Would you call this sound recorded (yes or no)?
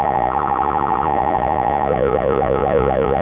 no